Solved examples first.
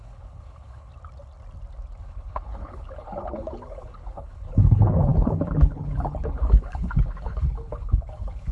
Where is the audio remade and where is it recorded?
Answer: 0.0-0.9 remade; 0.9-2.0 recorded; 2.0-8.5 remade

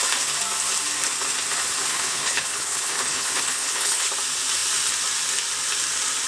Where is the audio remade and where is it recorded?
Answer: 0.0-1.9 recorded; 1.9-4.1 remade; 4.1-6.3 recorded